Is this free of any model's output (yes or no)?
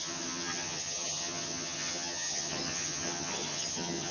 no